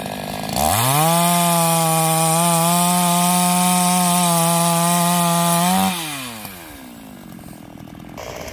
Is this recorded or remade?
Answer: recorded